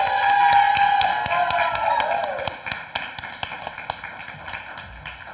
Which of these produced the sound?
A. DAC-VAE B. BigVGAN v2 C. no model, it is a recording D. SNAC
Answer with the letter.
C